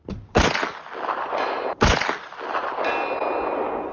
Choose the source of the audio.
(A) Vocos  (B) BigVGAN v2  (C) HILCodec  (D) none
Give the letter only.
D